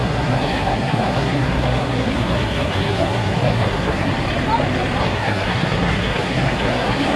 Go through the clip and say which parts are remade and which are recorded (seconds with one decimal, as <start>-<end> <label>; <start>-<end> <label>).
0.0-4.1 remade; 4.1-5.0 recorded; 5.0-7.2 remade

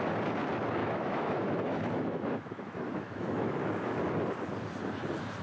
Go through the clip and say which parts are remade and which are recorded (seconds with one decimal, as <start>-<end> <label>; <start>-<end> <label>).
0.0-0.8 recorded; 0.8-4.0 remade; 4.0-5.4 recorded

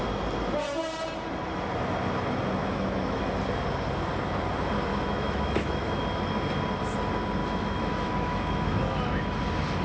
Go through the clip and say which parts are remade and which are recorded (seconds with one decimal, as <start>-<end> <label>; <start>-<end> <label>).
0.0-2.6 recorded; 2.6-3.2 remade; 3.2-4.9 recorded; 4.9-6.0 remade; 6.0-7.4 recorded; 7.4-9.4 remade; 9.4-9.8 recorded

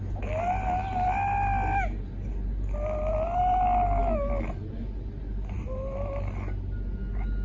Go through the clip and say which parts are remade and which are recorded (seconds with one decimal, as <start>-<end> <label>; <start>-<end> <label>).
0.0-7.4 recorded

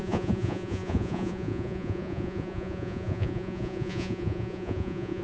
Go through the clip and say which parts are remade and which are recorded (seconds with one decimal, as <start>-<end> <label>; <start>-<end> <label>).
0.0-5.2 remade